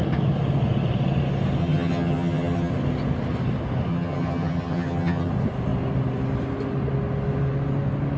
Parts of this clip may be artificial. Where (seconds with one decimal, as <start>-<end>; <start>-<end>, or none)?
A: 1.6-2.7; 3.9-5.3